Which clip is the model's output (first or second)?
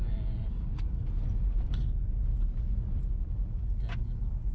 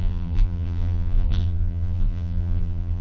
second